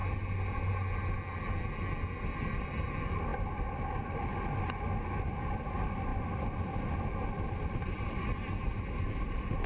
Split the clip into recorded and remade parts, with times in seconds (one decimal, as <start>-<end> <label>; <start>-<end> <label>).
0.0-9.7 recorded